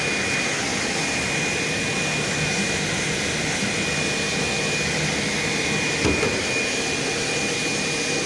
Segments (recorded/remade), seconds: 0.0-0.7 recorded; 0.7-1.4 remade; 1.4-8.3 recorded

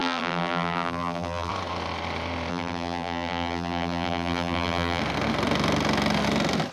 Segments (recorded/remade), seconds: 0.0-1.5 remade; 1.5-2.5 recorded; 2.5-5.0 remade; 5.0-6.7 recorded

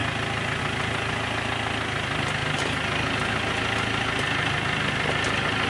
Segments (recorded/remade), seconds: 0.0-5.7 recorded

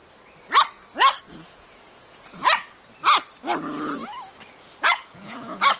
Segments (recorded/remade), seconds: 0.0-1.3 recorded; 1.3-2.4 remade; 2.4-4.8 recorded; 4.8-5.8 remade

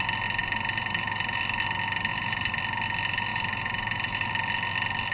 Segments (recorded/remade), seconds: 0.0-0.4 recorded; 0.4-1.4 remade; 1.4-2.1 recorded; 2.1-2.6 remade; 2.6-3.3 recorded; 3.3-4.3 remade; 4.3-5.1 recorded

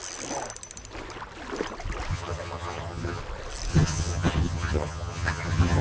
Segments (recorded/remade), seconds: 0.0-2.1 recorded; 2.1-3.2 remade; 3.2-3.7 recorded; 3.7-5.8 remade

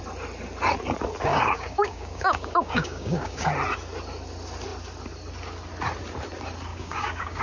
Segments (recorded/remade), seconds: 0.0-1.3 recorded; 1.3-3.5 remade; 3.5-6.7 recorded; 6.7-7.4 remade